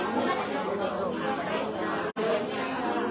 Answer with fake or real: real